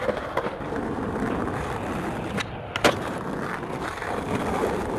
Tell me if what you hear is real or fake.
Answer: real